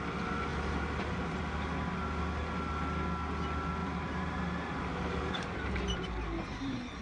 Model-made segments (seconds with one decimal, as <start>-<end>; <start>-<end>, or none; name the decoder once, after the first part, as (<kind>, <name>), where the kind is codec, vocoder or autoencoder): 0.5-1.4 (vocoder, BigVGAN v2); 3.8-7.0